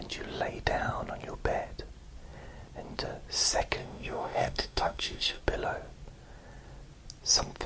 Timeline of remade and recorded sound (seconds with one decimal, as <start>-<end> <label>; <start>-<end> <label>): 0.0-3.8 recorded; 3.8-5.4 remade; 5.4-7.7 recorded